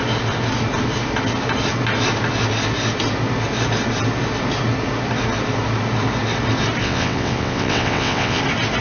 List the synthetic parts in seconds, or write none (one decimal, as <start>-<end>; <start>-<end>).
6.8-8.4